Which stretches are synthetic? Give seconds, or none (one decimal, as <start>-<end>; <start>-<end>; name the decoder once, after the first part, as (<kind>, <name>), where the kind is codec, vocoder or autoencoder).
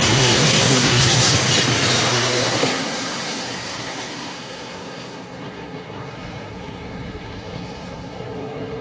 0.0-1.3 (codec, SNAC); 2.1-8.8